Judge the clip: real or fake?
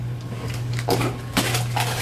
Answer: fake